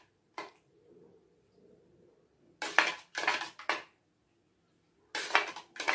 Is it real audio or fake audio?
real